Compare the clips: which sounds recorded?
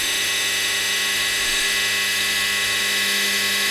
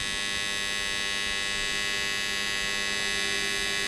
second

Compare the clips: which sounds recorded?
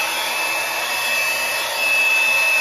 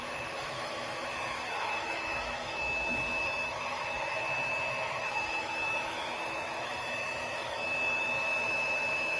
first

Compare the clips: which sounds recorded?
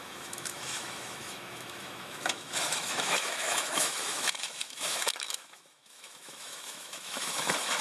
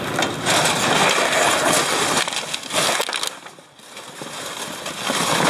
second